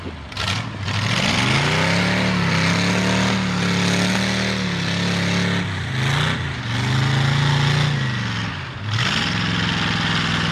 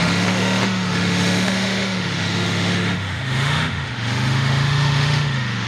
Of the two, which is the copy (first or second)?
second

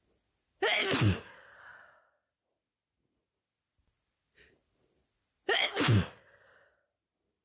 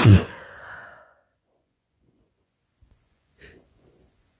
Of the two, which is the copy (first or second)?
second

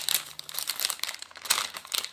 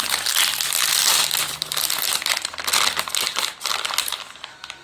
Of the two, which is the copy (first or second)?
first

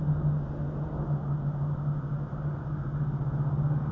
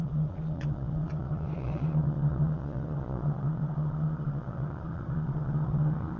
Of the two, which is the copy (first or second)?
second